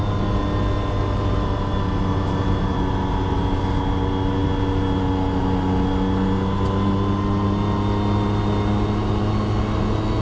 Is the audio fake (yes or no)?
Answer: no